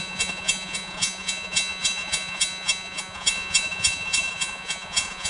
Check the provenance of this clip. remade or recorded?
remade